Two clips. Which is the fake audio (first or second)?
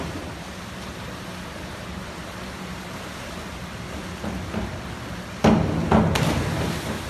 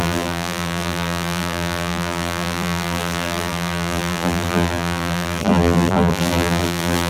second